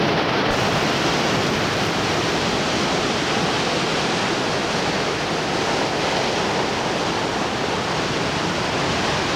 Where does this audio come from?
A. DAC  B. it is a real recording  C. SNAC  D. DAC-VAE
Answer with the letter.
B